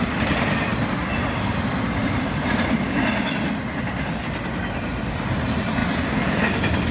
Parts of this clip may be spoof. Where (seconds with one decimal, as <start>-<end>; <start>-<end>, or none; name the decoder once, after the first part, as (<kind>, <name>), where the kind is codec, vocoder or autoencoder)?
2.0-3.3 (vocoder, BigVGAN v2)